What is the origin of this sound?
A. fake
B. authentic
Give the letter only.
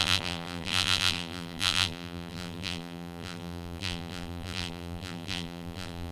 A